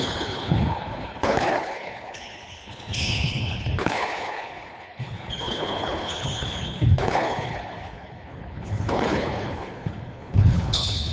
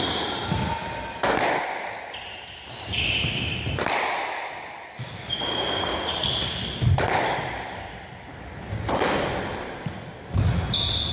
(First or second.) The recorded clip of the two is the second